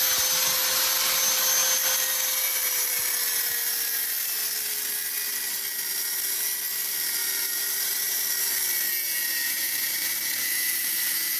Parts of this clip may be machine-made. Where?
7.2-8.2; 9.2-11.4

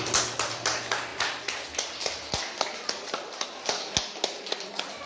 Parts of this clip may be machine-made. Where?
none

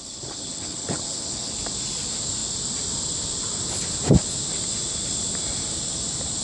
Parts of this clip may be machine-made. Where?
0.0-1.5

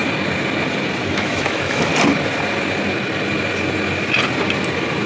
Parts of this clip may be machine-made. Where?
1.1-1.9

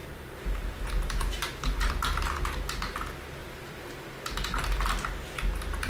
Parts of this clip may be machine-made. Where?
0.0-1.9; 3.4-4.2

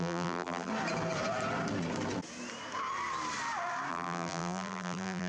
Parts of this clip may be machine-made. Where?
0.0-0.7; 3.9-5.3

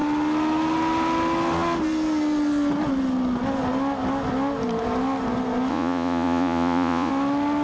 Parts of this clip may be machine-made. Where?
5.7-7.1